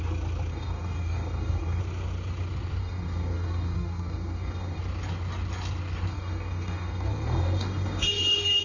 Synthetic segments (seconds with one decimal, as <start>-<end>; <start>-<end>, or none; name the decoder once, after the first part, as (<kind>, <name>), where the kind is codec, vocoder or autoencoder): 0.5-1.8 (codec, DAC); 2.8-4.8; 6.1-8.6